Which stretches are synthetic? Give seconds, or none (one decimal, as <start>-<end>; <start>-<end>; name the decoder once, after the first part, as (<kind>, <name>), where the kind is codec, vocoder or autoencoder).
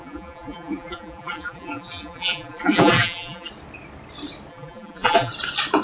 0.0-3.5 (vocoder, BigVGAN v2); 4.5-5.3